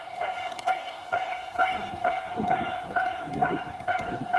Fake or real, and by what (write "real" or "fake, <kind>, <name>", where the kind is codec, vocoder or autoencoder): fake, codec, SNAC